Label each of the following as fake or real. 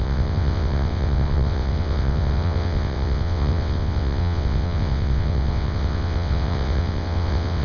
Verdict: fake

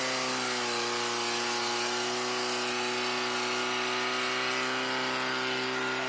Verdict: real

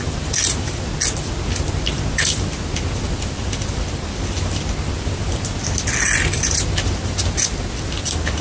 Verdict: real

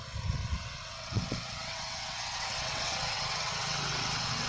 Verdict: fake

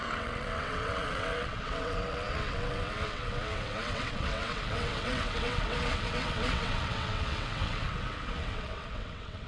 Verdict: fake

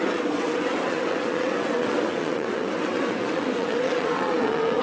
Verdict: fake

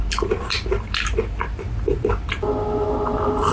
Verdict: real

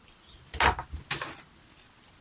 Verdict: real